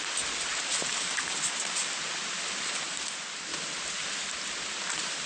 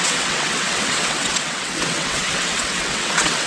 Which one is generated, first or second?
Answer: second